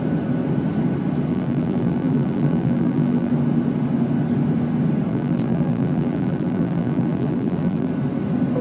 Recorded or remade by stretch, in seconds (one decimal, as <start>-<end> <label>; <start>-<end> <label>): 0.0-1.3 recorded; 1.3-3.3 remade; 3.3-5.1 recorded; 5.1-7.9 remade; 7.9-8.6 recorded